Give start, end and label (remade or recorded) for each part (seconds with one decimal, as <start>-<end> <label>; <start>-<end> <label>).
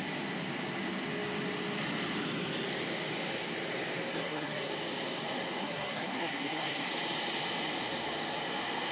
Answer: 0.0-4.1 recorded; 4.1-4.7 remade; 4.7-5.6 recorded; 5.6-6.9 remade; 6.9-8.9 recorded